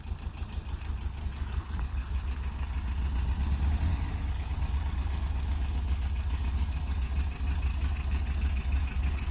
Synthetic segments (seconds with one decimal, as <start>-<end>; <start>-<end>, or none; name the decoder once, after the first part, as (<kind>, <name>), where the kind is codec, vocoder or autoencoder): 1.2-2.2 (codec, DAC); 3.9-7.1; 7.7-9.3